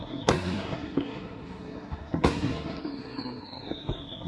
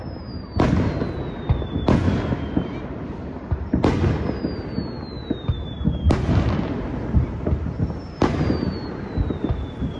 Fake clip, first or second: first